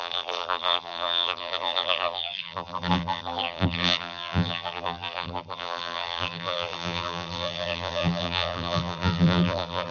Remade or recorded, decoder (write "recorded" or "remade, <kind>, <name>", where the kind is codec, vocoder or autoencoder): remade, vocoder, BigVGAN v2